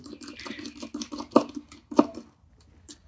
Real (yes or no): yes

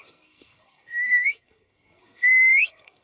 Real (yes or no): no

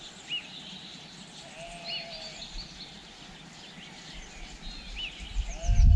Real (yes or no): yes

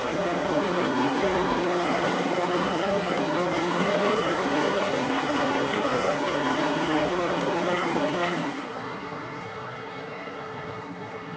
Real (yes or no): no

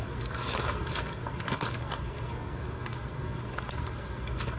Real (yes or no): no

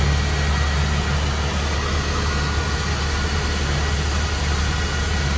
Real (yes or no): yes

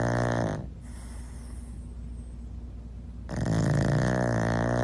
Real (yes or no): yes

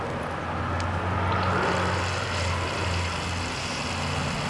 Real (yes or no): yes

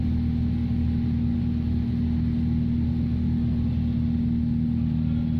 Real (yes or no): yes